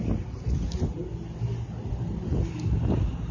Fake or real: real